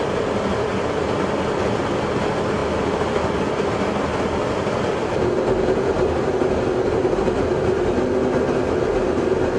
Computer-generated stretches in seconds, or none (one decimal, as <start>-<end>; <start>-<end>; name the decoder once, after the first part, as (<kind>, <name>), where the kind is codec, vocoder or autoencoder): none